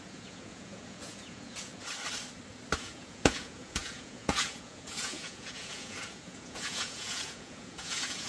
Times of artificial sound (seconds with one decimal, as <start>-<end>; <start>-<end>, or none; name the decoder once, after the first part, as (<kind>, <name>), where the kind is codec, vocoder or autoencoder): 0.0-1.7 (vocoder, Vocos); 2.8-8.3